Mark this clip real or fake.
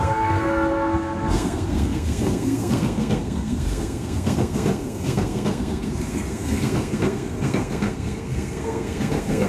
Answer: fake